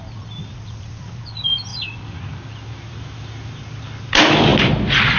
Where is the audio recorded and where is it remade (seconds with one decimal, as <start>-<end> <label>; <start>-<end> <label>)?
0.0-5.2 recorded